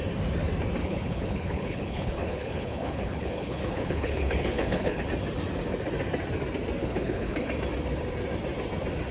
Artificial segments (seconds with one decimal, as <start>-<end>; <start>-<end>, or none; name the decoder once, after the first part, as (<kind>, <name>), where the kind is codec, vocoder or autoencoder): 0.8-5.0 (codec, HILCodec); 6.8-7.5